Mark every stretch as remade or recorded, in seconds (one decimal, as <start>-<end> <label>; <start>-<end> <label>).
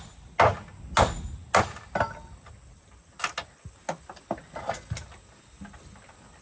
0.0-6.4 recorded